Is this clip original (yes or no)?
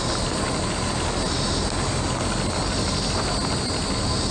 yes